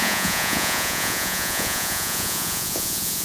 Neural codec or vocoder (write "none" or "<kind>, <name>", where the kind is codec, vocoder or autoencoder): vocoder, Vocos